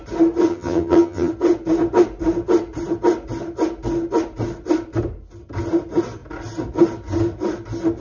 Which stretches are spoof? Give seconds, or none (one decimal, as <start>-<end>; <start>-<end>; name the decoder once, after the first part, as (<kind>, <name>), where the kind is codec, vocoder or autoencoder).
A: 0.5-1.3 (vocoder, HiFi-GAN)